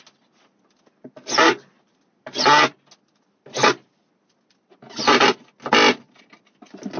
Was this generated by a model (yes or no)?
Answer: no